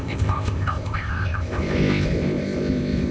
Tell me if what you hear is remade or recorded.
remade